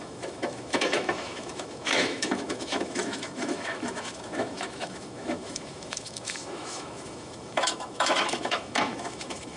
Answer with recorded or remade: remade